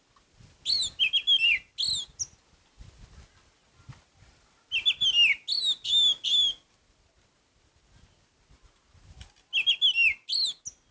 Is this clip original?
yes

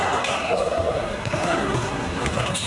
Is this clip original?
no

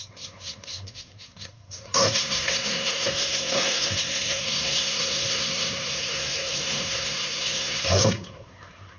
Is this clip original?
no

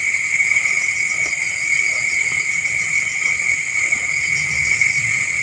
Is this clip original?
yes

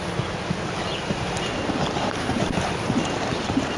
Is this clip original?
yes